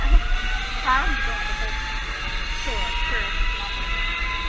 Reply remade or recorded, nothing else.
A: recorded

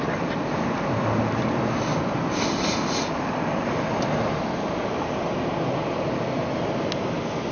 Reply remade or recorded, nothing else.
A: recorded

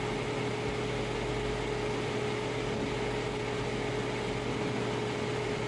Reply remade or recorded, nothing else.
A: recorded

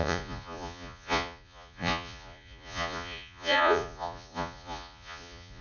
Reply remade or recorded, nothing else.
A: remade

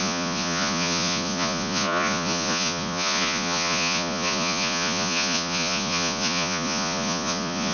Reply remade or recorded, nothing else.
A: remade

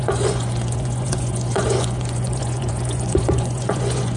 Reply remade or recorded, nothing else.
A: remade